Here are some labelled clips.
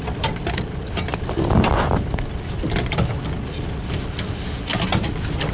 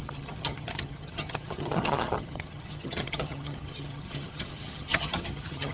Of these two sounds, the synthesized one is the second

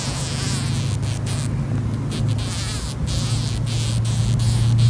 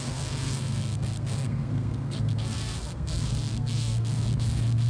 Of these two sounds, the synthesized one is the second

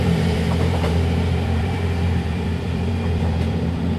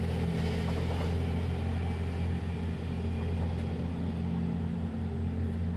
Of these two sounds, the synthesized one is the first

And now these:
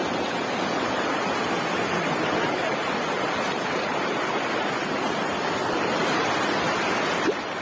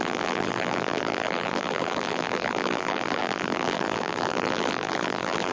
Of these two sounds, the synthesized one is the second